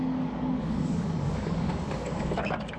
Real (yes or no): no